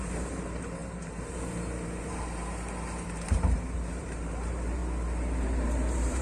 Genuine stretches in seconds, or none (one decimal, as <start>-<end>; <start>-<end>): 4.8-5.4

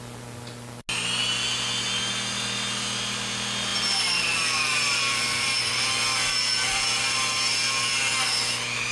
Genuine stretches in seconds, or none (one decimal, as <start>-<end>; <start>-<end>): 0.0-1.2; 1.7-3.7; 7.9-8.9

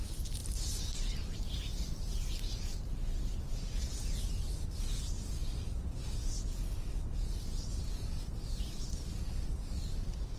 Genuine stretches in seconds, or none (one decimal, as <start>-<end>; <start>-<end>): 0.0-0.4; 3.4-10.4

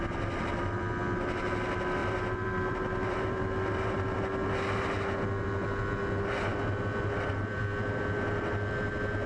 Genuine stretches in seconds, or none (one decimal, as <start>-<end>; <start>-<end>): 0.0-2.0; 3.4-9.3

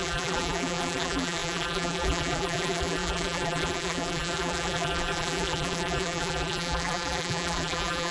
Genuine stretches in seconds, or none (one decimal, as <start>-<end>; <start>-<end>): none

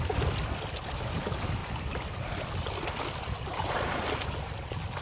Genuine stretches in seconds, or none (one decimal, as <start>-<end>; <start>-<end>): 0.0-1.6; 2.5-3.5; 4.5-5.0